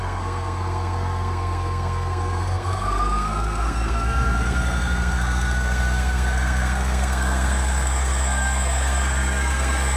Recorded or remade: remade